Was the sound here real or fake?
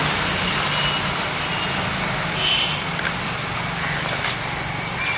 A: real